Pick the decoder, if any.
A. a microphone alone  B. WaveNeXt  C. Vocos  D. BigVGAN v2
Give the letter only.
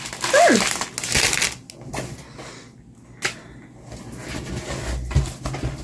A